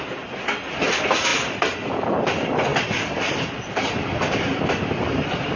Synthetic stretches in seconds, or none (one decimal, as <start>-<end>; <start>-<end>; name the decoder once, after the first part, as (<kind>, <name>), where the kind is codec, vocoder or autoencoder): none